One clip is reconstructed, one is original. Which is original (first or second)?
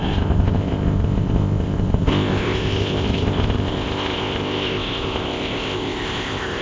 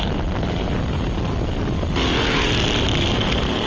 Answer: second